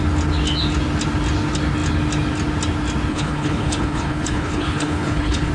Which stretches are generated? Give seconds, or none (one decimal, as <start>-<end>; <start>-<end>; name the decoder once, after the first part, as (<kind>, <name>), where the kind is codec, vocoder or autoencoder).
3.1-5.5 (codec, HILCodec)